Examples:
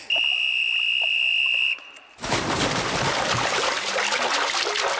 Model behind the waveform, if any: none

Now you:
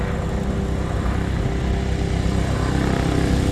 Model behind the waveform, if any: none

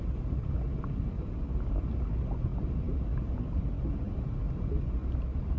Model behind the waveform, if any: none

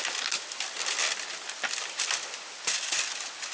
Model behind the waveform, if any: none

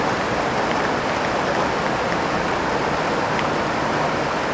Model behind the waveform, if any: none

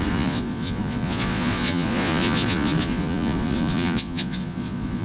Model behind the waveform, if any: vocoder, Vocos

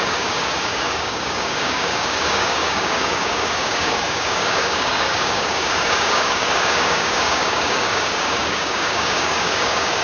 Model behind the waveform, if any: codec, DAC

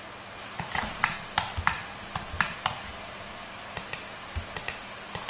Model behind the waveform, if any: none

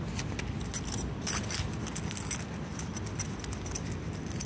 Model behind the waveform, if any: none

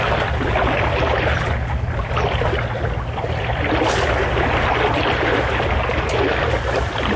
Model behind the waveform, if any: none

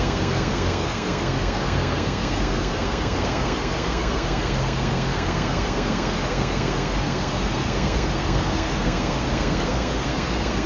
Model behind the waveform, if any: codec, SNAC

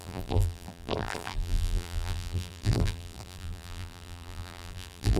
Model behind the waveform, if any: vocoder, BigVGAN v2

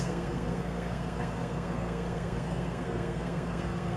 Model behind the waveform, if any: codec, SNAC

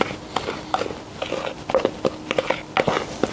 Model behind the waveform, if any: none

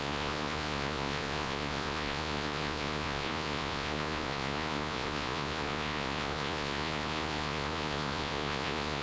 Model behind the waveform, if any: vocoder, Vocos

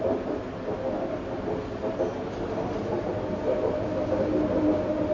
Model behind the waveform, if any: none